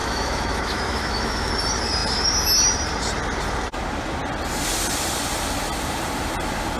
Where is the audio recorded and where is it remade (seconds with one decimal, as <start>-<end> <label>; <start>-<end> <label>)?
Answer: 0.0-1.5 remade; 1.5-6.8 recorded